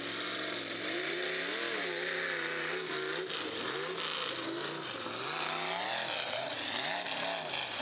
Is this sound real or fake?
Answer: real